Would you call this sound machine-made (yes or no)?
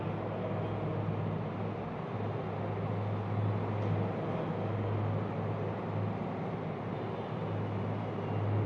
no